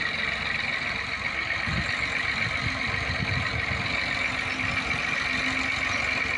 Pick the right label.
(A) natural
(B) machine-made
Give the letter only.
A